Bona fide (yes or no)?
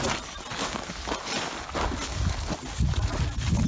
yes